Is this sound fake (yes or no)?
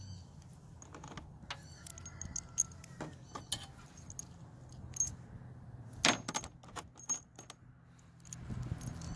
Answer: no